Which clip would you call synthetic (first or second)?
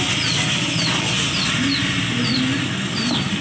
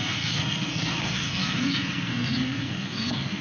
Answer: second